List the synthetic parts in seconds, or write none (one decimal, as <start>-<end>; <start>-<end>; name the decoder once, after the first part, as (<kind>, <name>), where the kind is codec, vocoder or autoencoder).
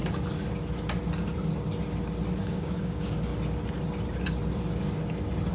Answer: 2.4-3.3 (codec, DAC)